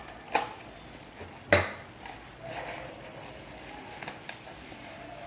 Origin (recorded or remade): recorded